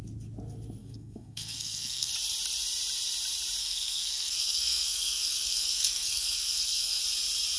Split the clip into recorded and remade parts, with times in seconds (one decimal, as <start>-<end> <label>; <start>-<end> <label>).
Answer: 0.0-0.8 recorded; 0.8-2.1 remade; 2.1-3.6 recorded; 3.6-7.0 remade; 7.0-7.6 recorded